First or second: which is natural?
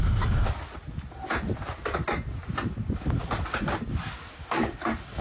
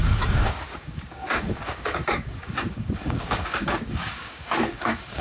first